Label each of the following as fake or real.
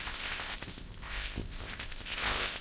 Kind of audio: fake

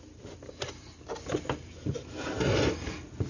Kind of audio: real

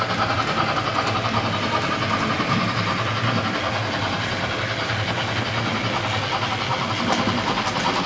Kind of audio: real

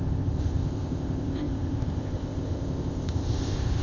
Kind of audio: fake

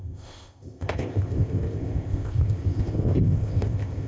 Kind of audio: fake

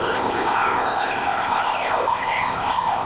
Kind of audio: fake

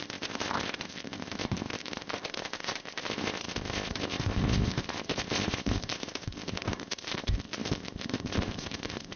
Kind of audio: fake